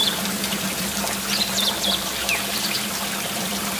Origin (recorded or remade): remade